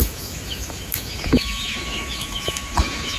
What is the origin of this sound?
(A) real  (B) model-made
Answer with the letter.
B